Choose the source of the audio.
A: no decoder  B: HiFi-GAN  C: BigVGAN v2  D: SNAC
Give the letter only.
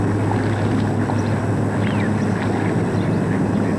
A